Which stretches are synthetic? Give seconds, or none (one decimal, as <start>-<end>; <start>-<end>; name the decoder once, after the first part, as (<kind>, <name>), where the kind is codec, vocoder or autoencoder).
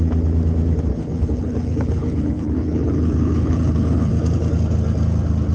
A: 0.9-4.1 (codec, HILCodec)